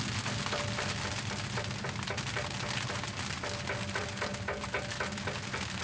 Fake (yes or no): no